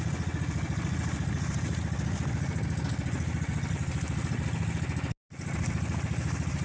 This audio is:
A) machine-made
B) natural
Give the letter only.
B